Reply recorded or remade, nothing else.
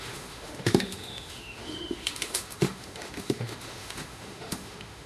remade